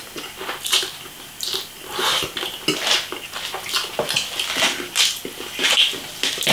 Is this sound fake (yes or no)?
no